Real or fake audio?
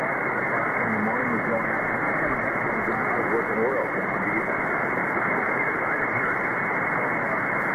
real